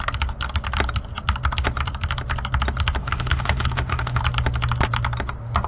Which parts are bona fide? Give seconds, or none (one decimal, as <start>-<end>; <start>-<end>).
0.0-3.0; 4.2-5.7